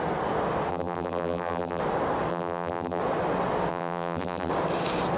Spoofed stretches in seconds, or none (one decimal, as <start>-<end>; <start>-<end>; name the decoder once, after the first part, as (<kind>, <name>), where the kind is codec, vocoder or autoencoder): 0.7-1.8 (vocoder, BigVGAN v2); 2.3-3.0; 3.7-4.5

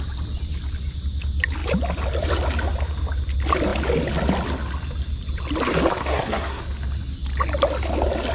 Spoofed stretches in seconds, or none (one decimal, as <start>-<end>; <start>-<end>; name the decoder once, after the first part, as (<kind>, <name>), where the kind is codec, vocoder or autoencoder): 6.0-6.6 (codec, SNAC)

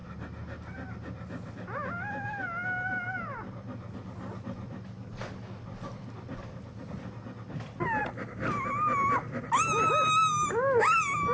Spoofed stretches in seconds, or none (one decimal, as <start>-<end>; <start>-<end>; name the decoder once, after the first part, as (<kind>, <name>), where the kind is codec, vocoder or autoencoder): none

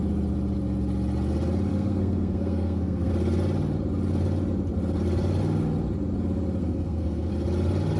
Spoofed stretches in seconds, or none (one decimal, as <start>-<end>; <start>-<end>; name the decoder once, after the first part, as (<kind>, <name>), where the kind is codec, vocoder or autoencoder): 1.7-3.1 (codec, SNAC); 6.6-7.3

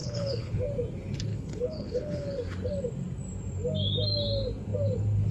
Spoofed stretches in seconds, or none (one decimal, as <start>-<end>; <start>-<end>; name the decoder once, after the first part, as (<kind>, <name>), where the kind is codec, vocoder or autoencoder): 0.0-0.6 (codec, HILCodec); 1.3-2.3

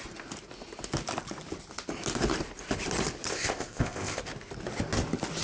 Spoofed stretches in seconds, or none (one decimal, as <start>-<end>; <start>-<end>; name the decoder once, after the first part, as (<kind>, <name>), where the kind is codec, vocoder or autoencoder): 3.3-4.2 (codec, ZipCodec)

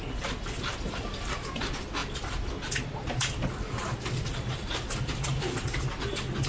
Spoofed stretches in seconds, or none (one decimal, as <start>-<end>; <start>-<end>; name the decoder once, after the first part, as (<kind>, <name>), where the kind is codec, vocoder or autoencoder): 1.1-1.6 (vocoder, BigVGAN v2)

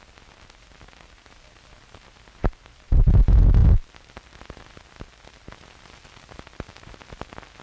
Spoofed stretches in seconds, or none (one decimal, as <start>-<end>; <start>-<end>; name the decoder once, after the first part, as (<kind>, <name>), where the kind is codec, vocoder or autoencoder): 2.4-3.0 (vocoder, BigVGAN v2); 3.6-4.1